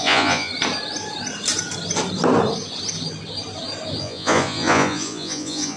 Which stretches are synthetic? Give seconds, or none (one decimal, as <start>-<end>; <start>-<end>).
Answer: 0.0-0.5; 4.0-5.8